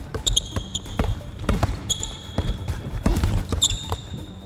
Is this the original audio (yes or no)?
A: no